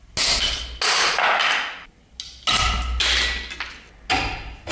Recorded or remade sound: recorded